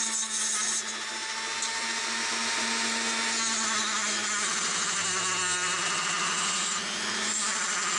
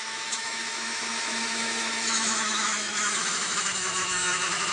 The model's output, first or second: second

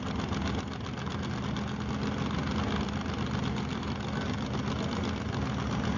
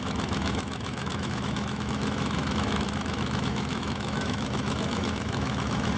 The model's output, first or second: second